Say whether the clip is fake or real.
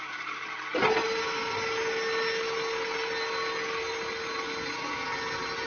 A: real